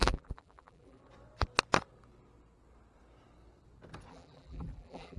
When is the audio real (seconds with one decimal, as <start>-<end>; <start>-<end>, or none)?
1.0-4.1